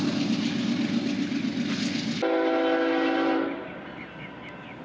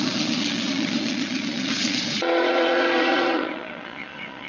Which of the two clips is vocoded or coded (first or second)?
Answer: second